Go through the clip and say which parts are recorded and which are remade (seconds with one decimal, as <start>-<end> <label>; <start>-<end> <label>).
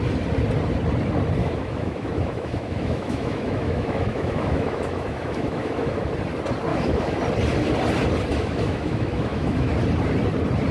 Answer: 0.0-1.4 recorded; 1.4-6.1 remade; 6.1-6.7 recorded; 6.7-7.2 remade; 7.2-8.3 recorded; 8.3-9.7 remade; 9.7-10.7 recorded